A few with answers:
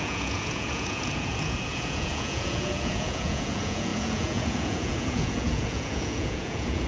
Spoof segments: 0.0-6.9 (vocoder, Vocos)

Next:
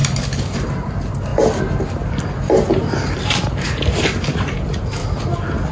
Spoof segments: none

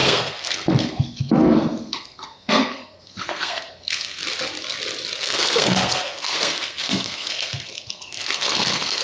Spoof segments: 0.0-4.2 (codec, SNAC); 5.2-9.0

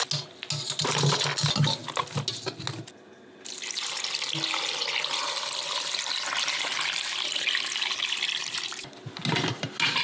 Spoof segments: none

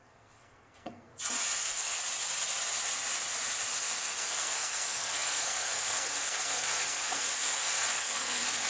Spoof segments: 0.0-1.1 (codec, SNAC); 1.6-2.0; 3.8-8.7

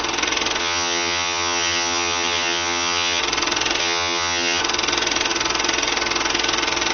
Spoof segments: 0.6-3.2 (vocoder, HiFi-GAN); 3.8-4.6